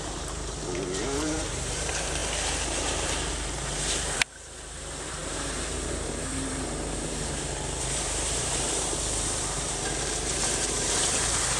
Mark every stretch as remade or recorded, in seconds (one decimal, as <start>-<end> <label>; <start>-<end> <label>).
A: 0.0-11.6 remade